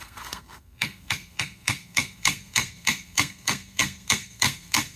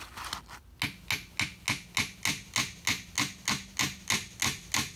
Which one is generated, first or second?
first